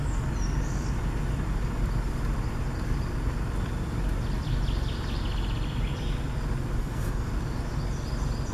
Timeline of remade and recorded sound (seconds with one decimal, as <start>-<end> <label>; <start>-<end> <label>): 0.0-6.8 recorded; 6.8-7.3 remade; 7.3-8.5 recorded